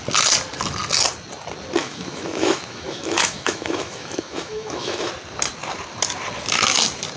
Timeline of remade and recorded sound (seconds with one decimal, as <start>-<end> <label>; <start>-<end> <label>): 0.0-1.8 recorded; 1.8-5.1 remade; 5.1-7.2 recorded